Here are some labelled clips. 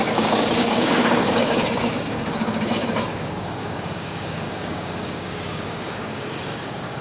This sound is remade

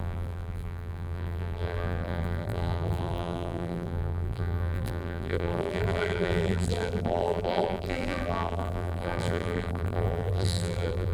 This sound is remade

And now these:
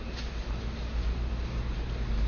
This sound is recorded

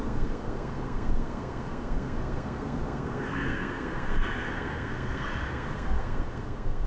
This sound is remade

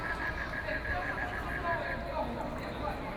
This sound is recorded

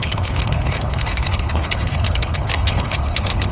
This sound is remade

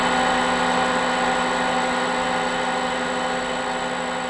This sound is recorded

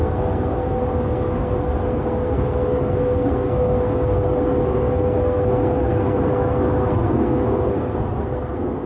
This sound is remade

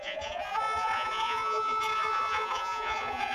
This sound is remade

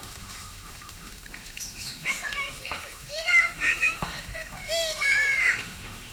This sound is remade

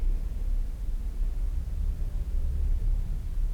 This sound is recorded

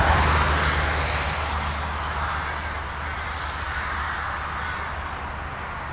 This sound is recorded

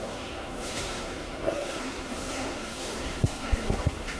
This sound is remade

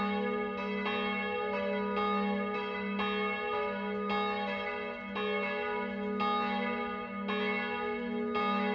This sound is recorded